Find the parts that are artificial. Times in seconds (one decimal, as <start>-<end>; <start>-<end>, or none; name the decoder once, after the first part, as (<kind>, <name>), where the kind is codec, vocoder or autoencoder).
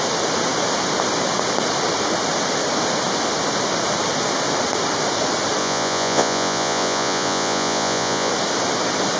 5.6-8.3 (vocoder, Vocos)